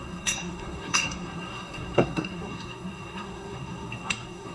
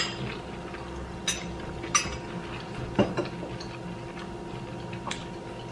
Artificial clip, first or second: first